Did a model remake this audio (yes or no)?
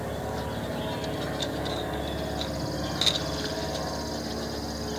no